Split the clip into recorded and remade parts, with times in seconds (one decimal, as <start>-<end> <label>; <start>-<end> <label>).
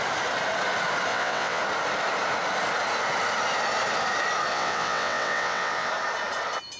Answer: 0.0-1.1 recorded; 1.1-1.6 remade; 1.6-4.5 recorded; 4.5-5.9 remade; 5.9-6.8 recorded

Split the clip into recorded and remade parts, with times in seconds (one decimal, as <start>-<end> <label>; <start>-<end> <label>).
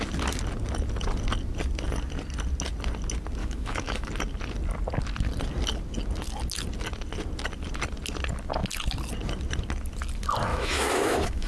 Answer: 0.0-3.4 recorded; 3.4-4.1 remade; 4.1-10.5 recorded; 10.5-11.5 remade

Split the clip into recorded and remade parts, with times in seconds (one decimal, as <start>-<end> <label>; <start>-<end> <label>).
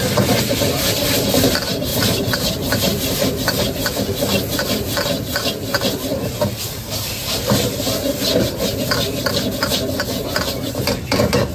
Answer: 0.0-1.9 recorded; 1.9-4.2 remade; 4.2-11.5 recorded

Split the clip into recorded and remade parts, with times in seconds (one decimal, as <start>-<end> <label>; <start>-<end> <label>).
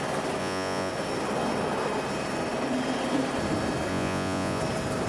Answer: 0.0-0.4 recorded; 0.4-0.9 remade; 0.9-3.9 recorded; 3.9-4.6 remade; 4.6-5.1 recorded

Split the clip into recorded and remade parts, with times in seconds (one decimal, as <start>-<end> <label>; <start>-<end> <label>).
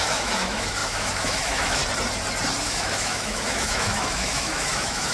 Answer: 0.0-1.8 remade; 1.8-2.6 recorded; 2.6-5.1 remade